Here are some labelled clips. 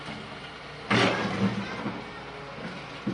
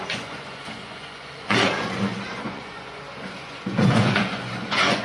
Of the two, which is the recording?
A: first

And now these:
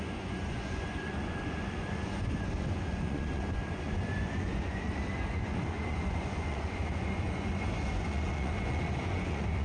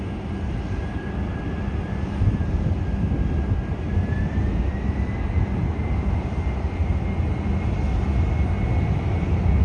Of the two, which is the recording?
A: second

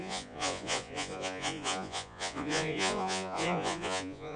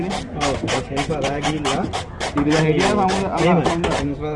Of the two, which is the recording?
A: second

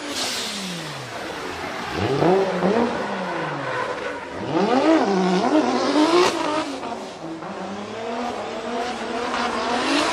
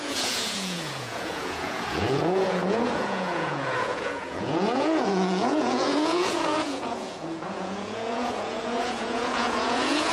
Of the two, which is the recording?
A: first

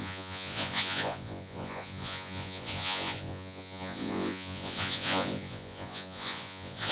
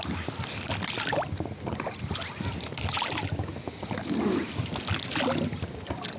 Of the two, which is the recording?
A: second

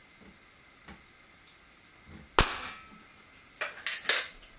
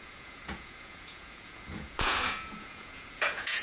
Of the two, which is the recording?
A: first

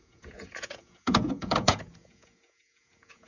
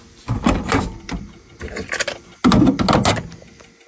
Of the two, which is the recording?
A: second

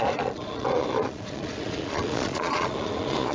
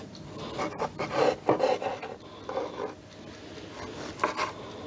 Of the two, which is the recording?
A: second